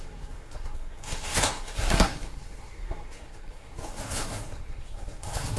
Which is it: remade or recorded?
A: remade